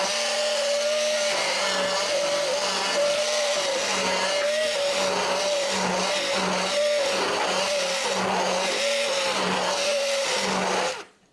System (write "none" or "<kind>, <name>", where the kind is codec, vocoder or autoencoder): none